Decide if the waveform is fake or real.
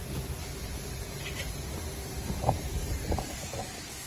real